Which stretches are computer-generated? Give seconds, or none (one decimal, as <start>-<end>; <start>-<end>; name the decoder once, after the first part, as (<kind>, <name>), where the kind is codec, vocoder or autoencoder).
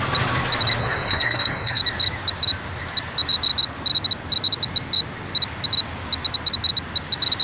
0.8-1.8 (codec, SNAC)